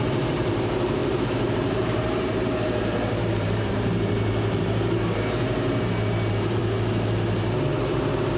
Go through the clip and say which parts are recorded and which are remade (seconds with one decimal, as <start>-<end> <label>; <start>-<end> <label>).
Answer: 0.0-6.6 remade; 6.6-7.9 recorded; 7.9-8.4 remade